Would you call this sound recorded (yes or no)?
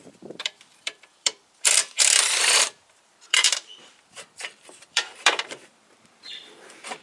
no